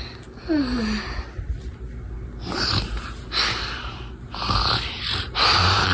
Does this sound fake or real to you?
real